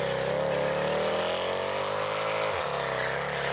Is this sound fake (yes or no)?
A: no